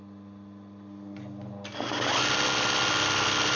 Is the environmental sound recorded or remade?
recorded